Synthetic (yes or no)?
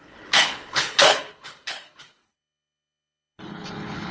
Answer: yes